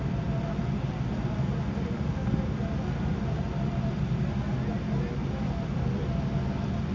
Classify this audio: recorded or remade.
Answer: recorded